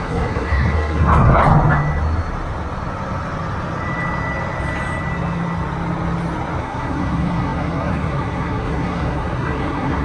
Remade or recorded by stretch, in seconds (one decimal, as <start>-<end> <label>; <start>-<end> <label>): 0.0-1.4 remade; 1.4-6.6 recorded; 6.6-10.0 remade